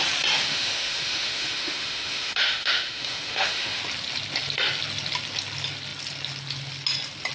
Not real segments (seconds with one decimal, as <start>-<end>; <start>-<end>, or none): 0.4-3.8